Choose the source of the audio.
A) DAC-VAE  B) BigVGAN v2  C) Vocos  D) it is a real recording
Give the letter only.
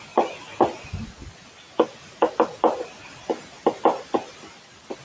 D